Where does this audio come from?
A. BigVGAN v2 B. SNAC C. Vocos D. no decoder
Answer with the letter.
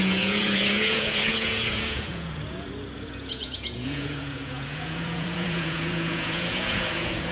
C